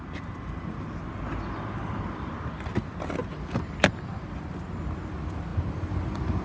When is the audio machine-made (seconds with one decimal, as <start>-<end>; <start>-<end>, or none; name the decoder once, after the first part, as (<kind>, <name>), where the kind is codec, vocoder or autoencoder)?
none

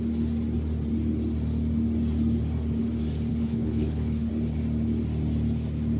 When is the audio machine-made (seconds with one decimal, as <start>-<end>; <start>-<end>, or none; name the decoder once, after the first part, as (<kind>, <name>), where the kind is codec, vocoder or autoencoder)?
3.3-4.3 (codec, HILCodec)

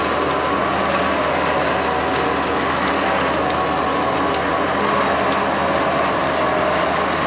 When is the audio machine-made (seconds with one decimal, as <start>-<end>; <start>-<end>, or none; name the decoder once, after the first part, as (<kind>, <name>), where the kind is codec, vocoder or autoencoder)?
none

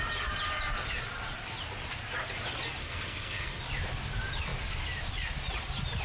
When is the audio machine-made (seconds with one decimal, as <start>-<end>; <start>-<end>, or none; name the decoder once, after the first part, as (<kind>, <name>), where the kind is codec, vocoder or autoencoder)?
2.8-3.6 (codec, SNAC)